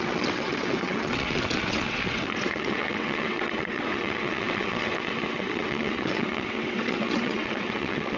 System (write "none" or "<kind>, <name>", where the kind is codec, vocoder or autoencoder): vocoder, WaveNeXt